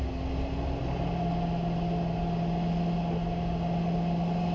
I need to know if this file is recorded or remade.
recorded